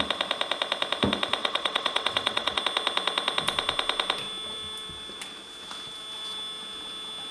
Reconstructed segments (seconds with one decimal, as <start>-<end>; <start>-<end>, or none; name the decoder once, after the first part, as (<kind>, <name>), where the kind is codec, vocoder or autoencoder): 1.4-2.6 (vocoder, WaveNeXt)